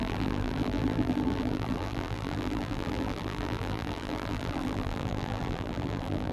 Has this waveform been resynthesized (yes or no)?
yes